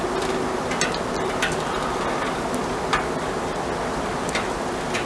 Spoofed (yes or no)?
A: no